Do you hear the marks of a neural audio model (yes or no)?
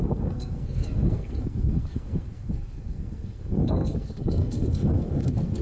yes